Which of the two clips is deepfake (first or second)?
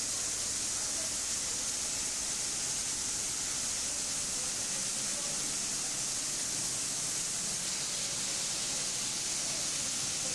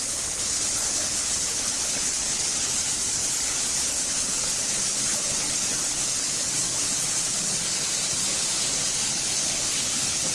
second